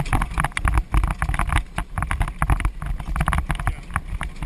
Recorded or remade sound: recorded